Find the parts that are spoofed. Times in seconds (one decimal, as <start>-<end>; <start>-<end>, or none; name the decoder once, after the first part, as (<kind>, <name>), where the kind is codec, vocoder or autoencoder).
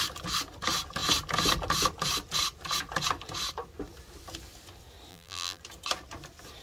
5.1-5.6 (vocoder, BigVGAN v2)